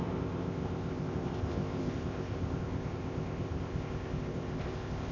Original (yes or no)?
no